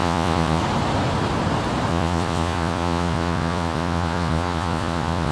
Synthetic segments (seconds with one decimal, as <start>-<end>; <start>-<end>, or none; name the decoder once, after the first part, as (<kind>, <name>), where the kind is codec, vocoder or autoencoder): 0.0-0.6 (vocoder, Vocos); 1.9-5.3